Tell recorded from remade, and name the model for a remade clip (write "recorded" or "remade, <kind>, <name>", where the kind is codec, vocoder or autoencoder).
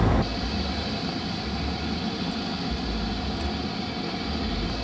recorded